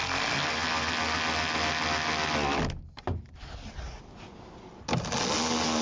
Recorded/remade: recorded